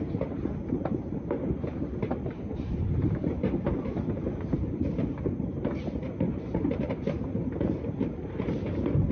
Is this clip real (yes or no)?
no